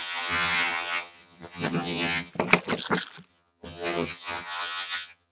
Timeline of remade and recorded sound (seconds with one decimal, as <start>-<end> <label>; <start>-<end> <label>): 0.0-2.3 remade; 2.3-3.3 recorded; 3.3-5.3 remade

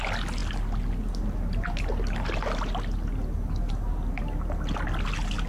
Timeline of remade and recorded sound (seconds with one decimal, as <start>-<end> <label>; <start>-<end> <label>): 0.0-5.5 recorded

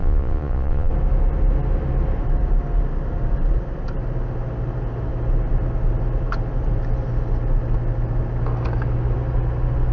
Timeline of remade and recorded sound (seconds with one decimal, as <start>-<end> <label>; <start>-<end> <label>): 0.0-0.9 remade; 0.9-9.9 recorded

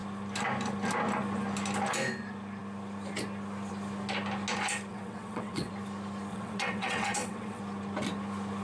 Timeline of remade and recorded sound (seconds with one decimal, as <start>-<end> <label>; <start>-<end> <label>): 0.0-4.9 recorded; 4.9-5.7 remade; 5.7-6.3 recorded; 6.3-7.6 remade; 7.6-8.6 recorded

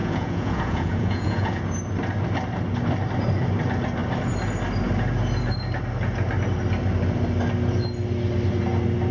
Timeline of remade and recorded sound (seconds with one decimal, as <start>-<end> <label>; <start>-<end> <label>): 0.0-1.6 remade; 1.6-9.1 recorded

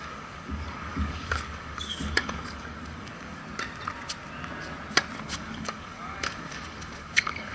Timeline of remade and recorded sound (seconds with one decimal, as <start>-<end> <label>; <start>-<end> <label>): 0.0-3.4 remade; 3.4-5.2 recorded; 5.2-7.5 remade